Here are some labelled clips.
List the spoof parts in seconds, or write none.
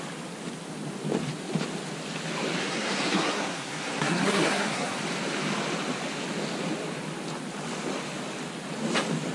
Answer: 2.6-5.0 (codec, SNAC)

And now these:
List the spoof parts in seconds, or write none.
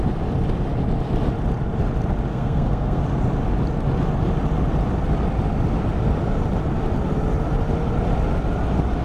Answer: 2.3-3.0 (codec, SNAC)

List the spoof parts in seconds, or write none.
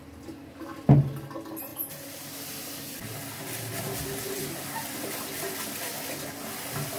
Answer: none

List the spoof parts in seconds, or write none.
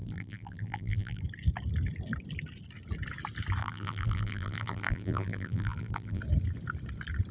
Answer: 0.0-1.2 (vocoder, BigVGAN v2); 3.6-6.2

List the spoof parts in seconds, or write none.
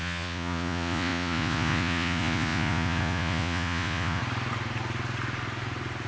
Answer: 0.0-4.2 (vocoder, Vocos)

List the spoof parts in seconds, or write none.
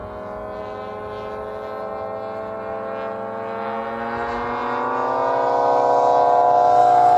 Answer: none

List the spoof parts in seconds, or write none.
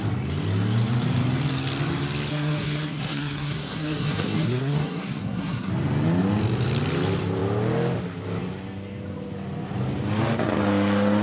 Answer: 2.3-5.7 (codec, SNAC)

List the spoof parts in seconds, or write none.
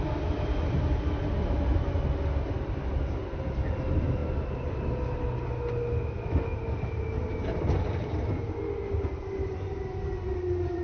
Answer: none